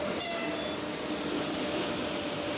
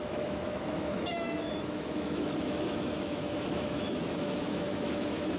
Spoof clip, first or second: second